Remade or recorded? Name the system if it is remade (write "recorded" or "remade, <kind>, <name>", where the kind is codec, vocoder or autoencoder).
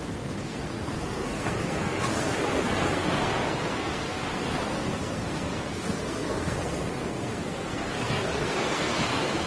remade, codec, SNAC